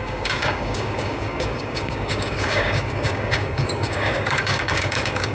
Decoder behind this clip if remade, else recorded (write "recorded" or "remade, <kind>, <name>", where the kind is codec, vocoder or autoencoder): remade, codec, DAC